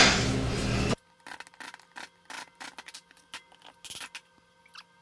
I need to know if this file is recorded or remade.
recorded